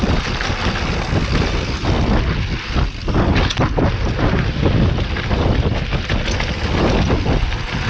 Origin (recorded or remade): recorded